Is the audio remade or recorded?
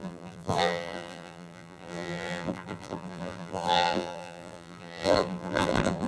remade